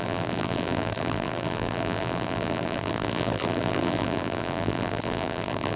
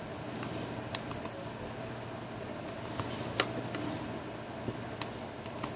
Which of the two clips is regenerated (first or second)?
first